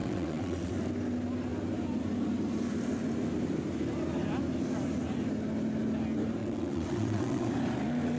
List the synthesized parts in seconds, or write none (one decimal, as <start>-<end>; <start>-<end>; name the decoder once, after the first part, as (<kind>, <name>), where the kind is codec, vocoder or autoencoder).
0.0-0.7 (vocoder, WaveNeXt); 6.4-7.5